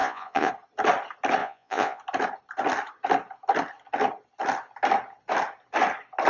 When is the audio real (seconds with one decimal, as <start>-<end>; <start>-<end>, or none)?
0.5-1.4; 2.0-6.3